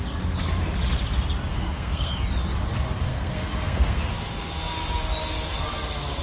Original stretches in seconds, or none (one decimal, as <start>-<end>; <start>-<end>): 0.0-1.5; 2.1-3.1; 4.0-6.2